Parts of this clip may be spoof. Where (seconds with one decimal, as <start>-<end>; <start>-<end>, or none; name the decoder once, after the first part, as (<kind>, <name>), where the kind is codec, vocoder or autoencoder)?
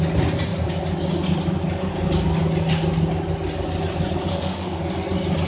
4.3-4.8 (autoencoder, DAC-VAE)